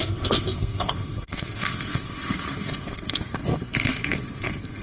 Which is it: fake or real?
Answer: fake